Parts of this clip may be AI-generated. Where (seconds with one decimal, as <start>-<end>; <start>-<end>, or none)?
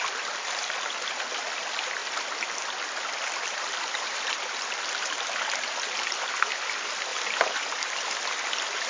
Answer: 2.0-5.9; 7.1-8.5